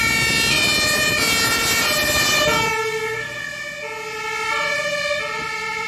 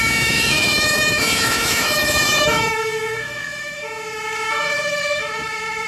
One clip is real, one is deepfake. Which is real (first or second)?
first